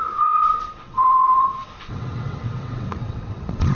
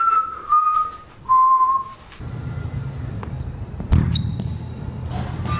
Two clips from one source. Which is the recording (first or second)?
second